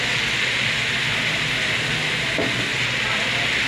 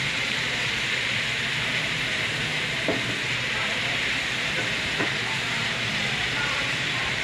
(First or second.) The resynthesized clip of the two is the second